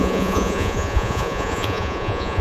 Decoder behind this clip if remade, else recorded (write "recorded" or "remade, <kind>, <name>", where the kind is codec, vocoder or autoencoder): remade, vocoder, Vocos